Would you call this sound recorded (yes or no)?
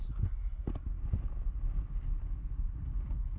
yes